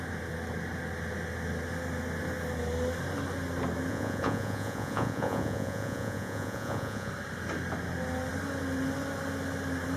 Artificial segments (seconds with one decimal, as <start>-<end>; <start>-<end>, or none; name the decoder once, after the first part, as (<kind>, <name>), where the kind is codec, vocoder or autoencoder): 3.9-7.1 (vocoder, Vocos)

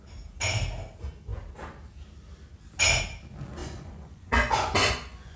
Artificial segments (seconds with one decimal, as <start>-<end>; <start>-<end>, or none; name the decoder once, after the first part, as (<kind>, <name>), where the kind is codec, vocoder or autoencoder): 3.6-5.4 (vocoder, Vocos)

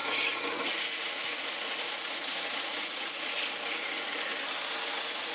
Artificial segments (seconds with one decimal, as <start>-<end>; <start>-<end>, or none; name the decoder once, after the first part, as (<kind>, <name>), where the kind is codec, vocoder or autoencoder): 0.0-4.3 (vocoder, Vocos); 4.8-5.3

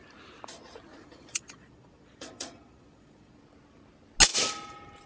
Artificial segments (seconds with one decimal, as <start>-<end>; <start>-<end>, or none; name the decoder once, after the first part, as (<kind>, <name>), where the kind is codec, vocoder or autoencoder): 0.9-3.4 (vocoder, Vocos)

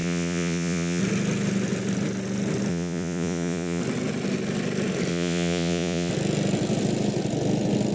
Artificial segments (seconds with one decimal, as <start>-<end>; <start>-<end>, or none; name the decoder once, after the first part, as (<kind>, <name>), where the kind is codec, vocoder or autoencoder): 0.0-1.0 (vocoder, Vocos); 2.7-3.8; 5.1-6.1

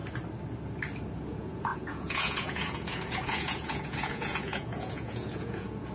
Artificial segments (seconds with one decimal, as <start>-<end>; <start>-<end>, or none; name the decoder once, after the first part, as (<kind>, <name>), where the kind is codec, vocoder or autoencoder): 1.1-5.9 (vocoder, Vocos)

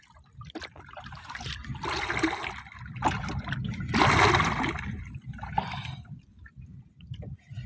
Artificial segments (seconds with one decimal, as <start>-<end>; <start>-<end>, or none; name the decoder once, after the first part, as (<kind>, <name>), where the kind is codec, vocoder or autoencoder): none

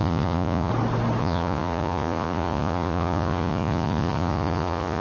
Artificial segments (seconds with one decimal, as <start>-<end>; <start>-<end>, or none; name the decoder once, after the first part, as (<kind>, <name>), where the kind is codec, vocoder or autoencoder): 0.0-0.7 (vocoder, Vocos); 1.2-5.0